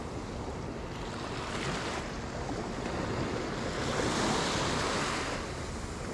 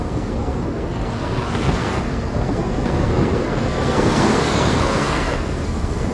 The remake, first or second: second